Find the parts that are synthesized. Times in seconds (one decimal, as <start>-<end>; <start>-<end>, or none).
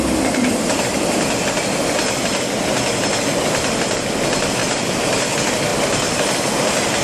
4.6-5.3